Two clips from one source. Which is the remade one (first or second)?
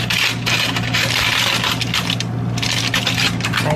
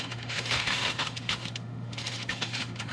second